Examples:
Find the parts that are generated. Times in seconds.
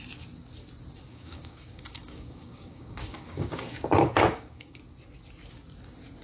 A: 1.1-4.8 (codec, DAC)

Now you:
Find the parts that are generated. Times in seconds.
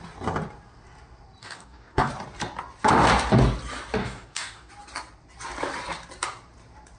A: 1.4-2.1 (codec, DAC); 4.0-4.7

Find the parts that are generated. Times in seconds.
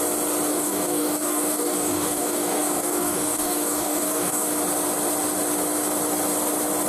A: 0.5-4.6 (codec, DAC)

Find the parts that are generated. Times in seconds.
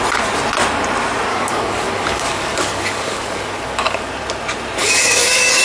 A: 1.3-4.1 (codec, DAC); 4.8-5.6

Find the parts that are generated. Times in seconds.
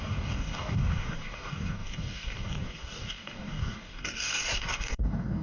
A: 0.0-5.4 (codec, DAC)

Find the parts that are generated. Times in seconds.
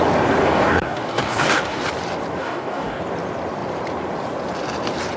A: 0.4-1.8 (codec, DAC); 2.4-3.0